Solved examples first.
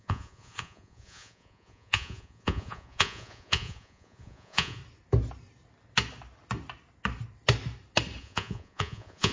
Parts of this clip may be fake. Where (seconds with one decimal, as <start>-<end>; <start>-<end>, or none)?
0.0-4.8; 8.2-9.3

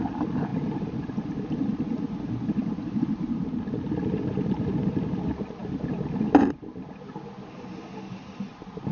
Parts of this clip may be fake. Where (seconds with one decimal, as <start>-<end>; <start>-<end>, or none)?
none

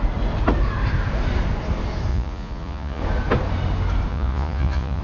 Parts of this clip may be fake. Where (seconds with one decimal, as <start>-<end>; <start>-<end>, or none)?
2.1-3.0; 4.1-5.0

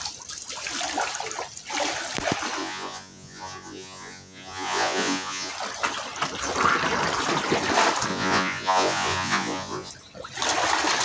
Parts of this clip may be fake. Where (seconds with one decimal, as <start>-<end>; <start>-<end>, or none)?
2.6-5.5; 8.1-9.9

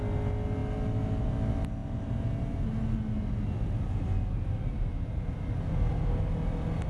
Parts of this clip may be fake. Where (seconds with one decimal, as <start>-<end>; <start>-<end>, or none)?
none

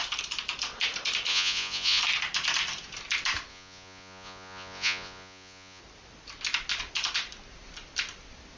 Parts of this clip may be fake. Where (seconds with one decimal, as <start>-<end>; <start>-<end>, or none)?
1.3-2.0; 3.5-5.8

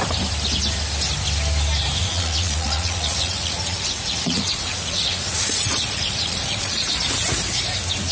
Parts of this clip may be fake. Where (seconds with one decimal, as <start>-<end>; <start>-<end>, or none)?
2.0-6.9